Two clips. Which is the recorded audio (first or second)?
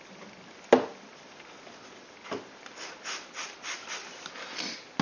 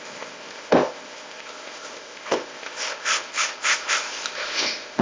first